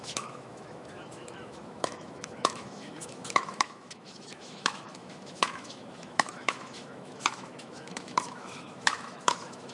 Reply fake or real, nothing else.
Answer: fake